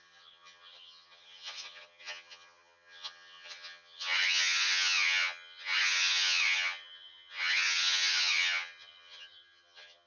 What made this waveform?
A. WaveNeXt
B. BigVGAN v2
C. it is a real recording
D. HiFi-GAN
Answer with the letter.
D